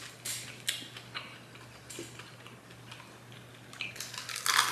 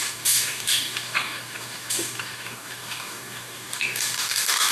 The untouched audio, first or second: first